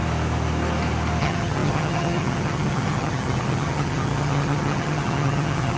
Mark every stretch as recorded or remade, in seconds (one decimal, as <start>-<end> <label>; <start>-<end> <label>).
0.0-1.2 recorded; 1.2-5.8 remade